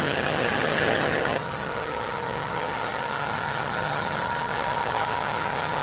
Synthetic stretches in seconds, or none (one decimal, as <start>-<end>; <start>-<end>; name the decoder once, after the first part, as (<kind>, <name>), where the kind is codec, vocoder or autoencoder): 0.0-5.8 (vocoder, HiFi-GAN)